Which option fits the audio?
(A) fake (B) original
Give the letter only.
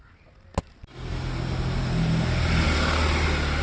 B